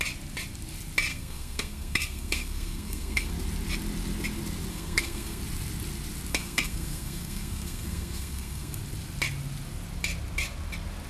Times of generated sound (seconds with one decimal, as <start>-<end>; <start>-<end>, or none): 1.1-3.3; 4.7-5.4; 6.3-8.8